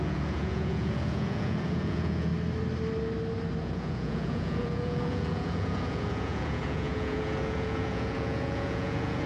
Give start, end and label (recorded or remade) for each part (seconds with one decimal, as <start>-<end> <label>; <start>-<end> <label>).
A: 0.0-2.3 remade; 2.3-3.6 recorded; 3.6-9.3 remade